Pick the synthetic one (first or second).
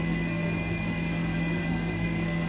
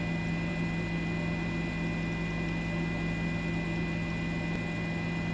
first